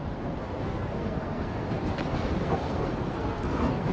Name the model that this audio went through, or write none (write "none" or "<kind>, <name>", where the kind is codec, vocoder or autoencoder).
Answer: codec, SNAC